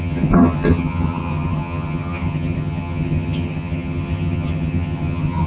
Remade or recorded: remade